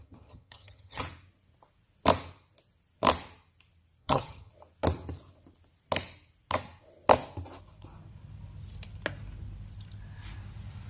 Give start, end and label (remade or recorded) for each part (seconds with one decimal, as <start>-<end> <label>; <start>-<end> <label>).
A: 0.0-1.0 remade; 1.0-4.0 recorded; 4.0-4.5 remade; 4.5-10.9 recorded